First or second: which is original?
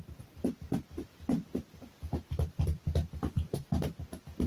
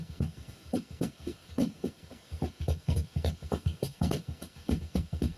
first